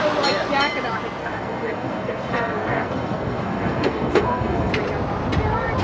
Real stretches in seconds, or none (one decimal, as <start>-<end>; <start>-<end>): 0.0-1.2; 4.7-5.8